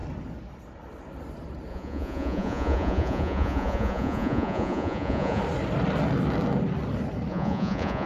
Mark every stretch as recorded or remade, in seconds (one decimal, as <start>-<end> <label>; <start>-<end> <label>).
0.0-1.7 recorded; 1.7-5.4 remade; 5.4-7.3 recorded; 7.3-8.1 remade